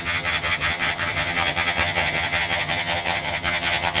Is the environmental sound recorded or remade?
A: remade